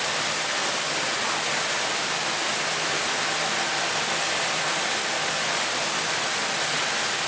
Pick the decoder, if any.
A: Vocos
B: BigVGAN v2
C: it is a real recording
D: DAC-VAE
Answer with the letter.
C